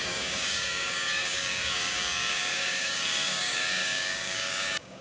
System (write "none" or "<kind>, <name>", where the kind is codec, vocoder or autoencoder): codec, DAC